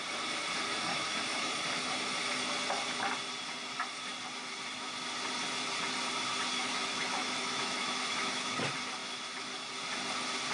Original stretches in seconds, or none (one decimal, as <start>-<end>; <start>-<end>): 0.0-0.9; 1.5-6.5; 8.6-9.0; 9.7-10.5